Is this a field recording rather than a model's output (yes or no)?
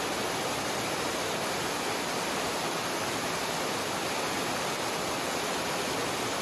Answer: yes